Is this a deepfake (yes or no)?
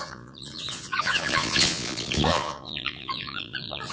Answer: yes